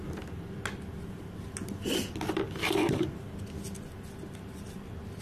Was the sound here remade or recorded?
recorded